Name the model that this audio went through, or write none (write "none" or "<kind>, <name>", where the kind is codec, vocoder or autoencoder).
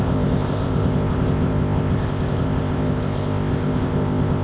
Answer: codec, ZipCodec